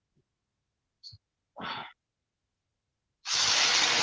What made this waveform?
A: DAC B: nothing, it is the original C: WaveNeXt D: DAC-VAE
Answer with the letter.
D